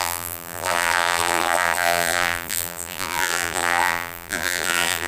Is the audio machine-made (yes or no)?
yes